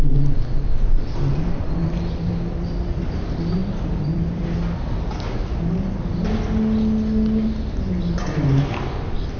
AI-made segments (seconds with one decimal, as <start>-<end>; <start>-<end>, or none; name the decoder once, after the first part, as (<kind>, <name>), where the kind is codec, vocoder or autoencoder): 3.6-4.4 (vocoder, BigVGAN v2)